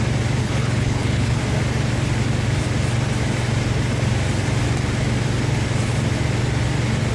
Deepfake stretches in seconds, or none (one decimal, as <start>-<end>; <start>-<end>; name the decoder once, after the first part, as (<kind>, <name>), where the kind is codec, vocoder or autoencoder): 0.4-1.4 (codec, HILCodec)